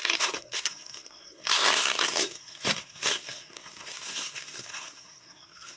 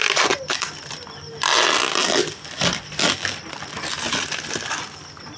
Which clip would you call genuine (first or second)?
second